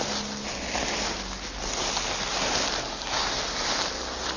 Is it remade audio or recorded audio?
recorded